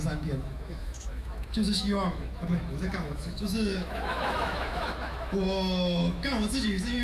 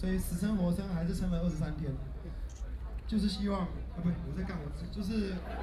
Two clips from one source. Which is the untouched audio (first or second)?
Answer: second